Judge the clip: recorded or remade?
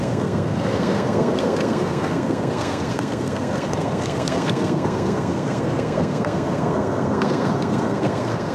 remade